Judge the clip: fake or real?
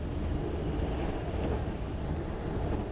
real